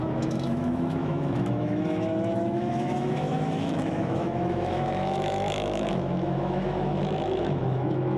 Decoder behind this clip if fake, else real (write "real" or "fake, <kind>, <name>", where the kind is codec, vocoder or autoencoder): fake, autoencoder, DAC-VAE